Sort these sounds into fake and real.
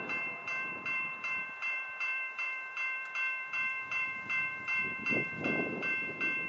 fake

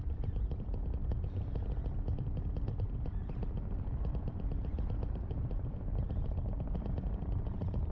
fake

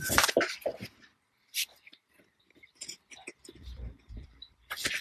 fake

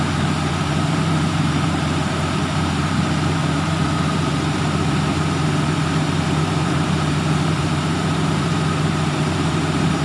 fake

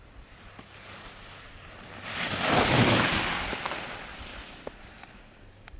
fake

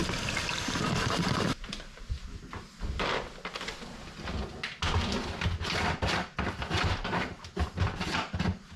real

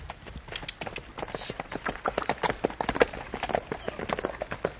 real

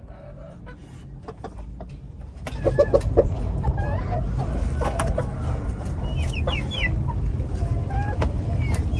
real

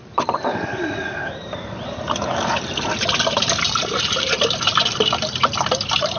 fake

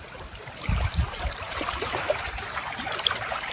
fake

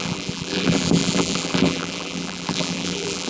fake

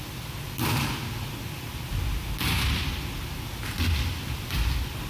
real